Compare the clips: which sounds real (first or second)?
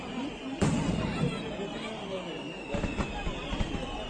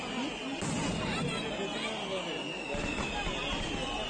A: second